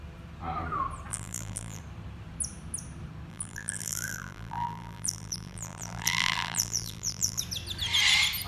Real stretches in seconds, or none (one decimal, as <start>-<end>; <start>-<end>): 0.0-1.1; 1.8-3.3; 7.4-8.5